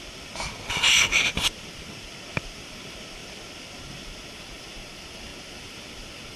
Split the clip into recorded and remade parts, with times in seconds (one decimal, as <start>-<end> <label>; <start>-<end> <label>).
0.0-6.4 recorded